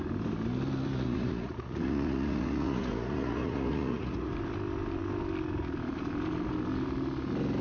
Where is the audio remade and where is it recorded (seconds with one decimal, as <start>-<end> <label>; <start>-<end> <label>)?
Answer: 0.0-0.9 recorded; 0.9-4.3 remade; 4.3-7.6 recorded